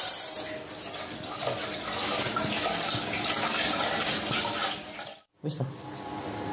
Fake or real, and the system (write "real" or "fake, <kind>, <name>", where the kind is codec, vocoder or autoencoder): real